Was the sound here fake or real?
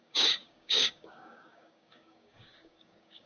fake